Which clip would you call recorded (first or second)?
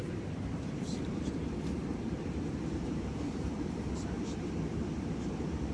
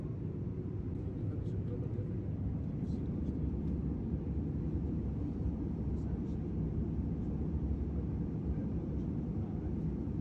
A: second